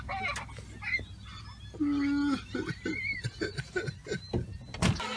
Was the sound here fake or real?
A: real